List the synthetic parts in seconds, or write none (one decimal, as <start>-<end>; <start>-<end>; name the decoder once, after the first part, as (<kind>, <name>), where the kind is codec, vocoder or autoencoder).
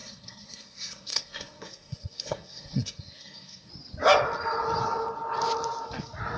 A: 0.0-3.7 (codec, SNAC)